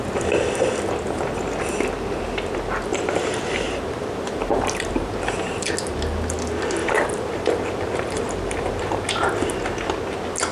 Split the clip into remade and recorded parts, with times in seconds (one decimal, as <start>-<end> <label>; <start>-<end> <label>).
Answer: 0.0-2.9 recorded; 2.9-5.7 remade; 5.7-6.8 recorded; 6.8-9.1 remade; 9.1-10.5 recorded